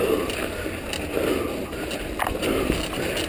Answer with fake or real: real